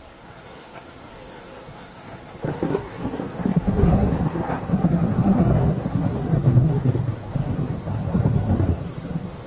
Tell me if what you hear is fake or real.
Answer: fake